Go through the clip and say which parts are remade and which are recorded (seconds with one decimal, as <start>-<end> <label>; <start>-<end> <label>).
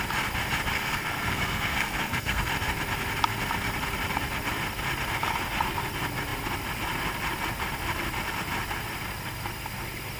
0.0-0.7 recorded; 0.7-2.5 remade; 2.5-10.2 recorded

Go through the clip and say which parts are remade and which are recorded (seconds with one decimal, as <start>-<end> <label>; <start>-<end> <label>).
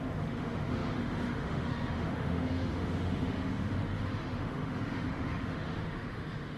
0.0-6.6 remade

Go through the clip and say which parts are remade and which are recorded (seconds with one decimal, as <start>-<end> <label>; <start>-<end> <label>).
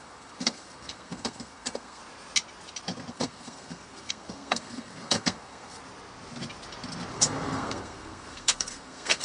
0.0-2.0 remade; 2.0-3.1 recorded; 3.1-5.8 remade; 5.8-7.1 recorded; 7.1-9.2 remade